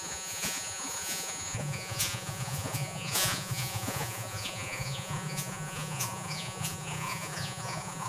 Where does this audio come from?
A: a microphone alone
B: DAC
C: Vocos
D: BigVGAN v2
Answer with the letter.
C